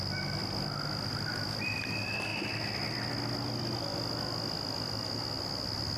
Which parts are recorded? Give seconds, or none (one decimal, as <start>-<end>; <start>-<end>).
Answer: 0.0-6.0